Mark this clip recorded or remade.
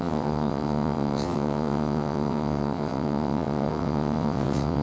remade